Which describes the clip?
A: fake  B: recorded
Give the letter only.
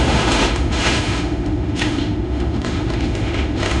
A